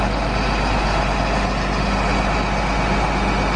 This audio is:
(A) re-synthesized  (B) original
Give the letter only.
B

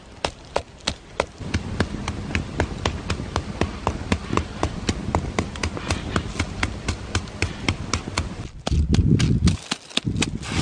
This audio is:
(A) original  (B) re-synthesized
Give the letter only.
A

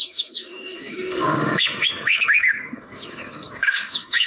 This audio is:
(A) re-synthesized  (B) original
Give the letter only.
A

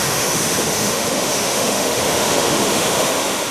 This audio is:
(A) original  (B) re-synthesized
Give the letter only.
B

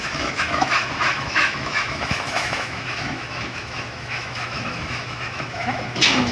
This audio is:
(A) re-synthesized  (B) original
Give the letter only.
A